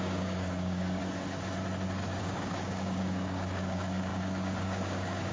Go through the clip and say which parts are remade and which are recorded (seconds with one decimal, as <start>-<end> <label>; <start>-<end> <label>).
0.0-1.0 remade; 1.0-2.2 recorded; 2.2-5.3 remade